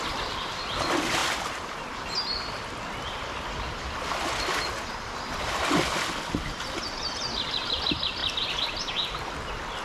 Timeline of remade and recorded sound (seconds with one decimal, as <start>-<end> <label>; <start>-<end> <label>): 0.0-9.8 recorded